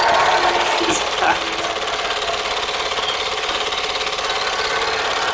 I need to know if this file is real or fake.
real